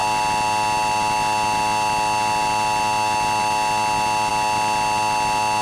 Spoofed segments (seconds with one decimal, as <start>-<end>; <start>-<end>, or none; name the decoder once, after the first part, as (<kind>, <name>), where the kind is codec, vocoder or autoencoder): none